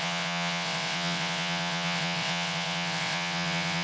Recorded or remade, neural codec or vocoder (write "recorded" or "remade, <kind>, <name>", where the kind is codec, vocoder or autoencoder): remade, vocoder, WaveNeXt